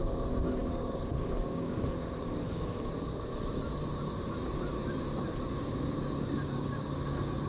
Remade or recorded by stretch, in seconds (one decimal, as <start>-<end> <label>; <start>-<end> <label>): 0.0-2.7 remade; 2.7-5.6 recorded; 5.6-7.5 remade